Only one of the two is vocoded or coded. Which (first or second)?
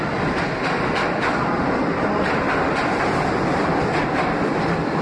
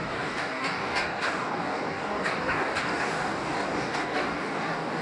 second